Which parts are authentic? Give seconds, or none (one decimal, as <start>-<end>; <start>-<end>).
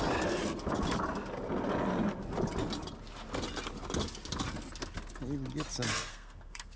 0.0-6.1